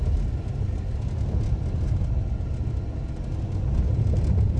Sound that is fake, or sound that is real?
real